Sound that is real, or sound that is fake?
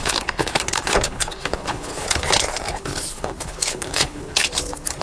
fake